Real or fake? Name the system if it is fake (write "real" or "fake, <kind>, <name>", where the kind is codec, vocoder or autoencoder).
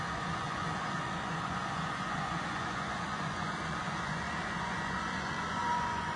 fake, vocoder, Vocos